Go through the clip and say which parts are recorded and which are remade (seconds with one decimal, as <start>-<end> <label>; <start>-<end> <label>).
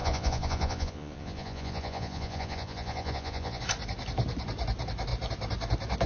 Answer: 0.0-3.6 remade; 3.6-6.1 recorded